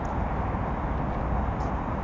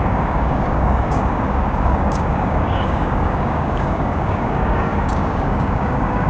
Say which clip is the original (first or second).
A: first